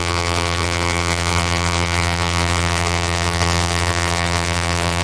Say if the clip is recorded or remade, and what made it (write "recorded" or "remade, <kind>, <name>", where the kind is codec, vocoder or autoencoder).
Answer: remade, vocoder, BigVGAN v2